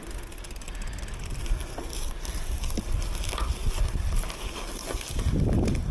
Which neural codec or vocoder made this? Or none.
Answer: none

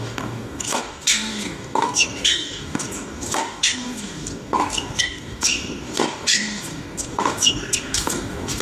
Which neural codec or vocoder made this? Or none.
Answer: codec, DAC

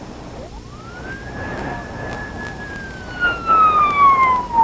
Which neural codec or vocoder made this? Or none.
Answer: none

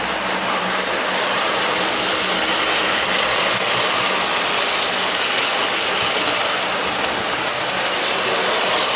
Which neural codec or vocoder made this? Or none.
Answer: none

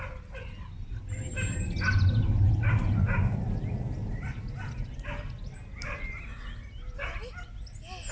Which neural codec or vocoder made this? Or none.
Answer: none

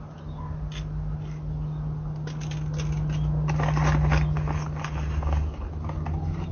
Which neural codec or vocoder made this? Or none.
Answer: none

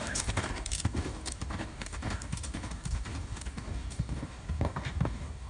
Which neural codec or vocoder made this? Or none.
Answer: codec, DAC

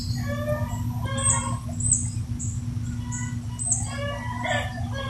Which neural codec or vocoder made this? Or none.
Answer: none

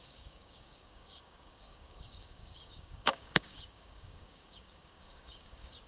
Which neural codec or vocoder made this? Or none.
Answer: codec, DAC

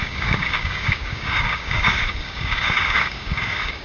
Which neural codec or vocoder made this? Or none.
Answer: codec, DAC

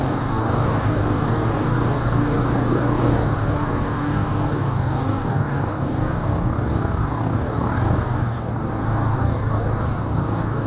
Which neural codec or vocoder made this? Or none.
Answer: codec, DAC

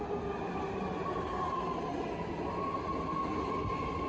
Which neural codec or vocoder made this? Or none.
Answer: none